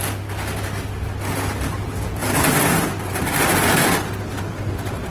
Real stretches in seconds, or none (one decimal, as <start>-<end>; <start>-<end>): 0.0-5.1